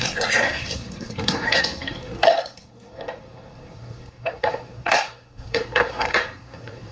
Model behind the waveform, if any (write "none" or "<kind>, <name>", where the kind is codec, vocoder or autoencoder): codec, SNAC